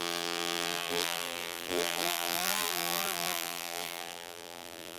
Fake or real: fake